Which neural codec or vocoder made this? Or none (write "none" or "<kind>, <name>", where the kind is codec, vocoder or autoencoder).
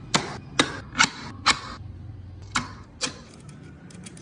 none